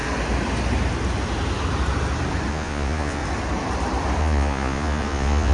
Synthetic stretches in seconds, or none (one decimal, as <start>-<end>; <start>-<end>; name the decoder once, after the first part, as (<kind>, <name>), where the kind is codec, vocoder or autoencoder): 2.5-3.2 (vocoder, Vocos); 4.2-5.5